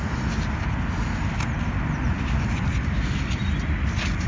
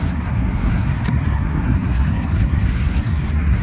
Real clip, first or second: first